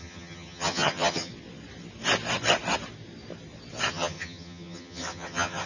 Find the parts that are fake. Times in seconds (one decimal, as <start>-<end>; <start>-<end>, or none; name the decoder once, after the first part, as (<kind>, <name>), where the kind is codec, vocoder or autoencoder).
0.0-1.3 (vocoder, HiFi-GAN); 3.9-5.7